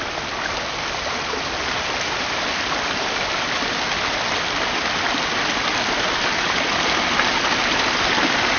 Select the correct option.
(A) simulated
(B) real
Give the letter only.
B